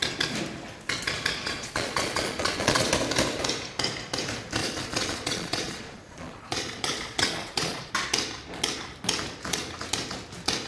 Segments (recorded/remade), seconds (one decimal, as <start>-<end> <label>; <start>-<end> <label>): 0.0-1.4 recorded; 1.4-2.9 remade; 2.9-4.6 recorded; 4.6-7.9 remade; 7.9-10.7 recorded